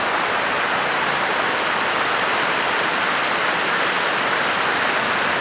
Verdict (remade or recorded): recorded